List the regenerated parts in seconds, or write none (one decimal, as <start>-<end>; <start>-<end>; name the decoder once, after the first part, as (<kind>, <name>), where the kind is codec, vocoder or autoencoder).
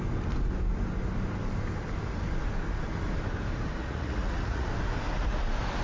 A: 3.8-4.7 (vocoder, Vocos)